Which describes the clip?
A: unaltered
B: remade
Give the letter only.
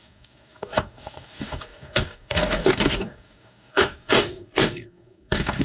B